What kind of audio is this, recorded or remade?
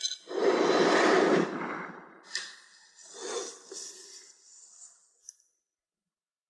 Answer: recorded